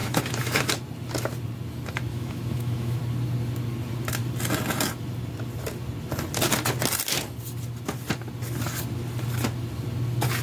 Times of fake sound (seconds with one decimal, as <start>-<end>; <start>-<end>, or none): 0.0-0.7; 2.1-3.0